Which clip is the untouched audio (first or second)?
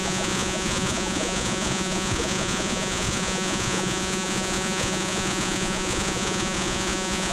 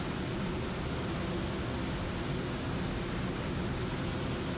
second